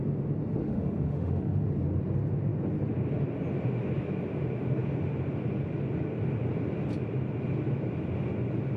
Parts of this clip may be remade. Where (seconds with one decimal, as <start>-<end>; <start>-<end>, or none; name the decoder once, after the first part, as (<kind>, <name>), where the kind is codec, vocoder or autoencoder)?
0.6-1.7 (autoencoder, DAC-VAE)